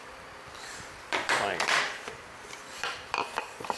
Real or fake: fake